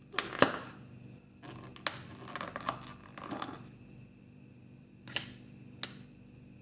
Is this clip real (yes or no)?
yes